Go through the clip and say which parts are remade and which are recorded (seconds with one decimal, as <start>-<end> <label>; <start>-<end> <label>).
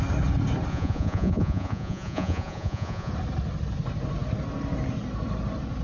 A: 0.0-0.7 recorded; 0.7-3.1 remade; 3.1-5.8 recorded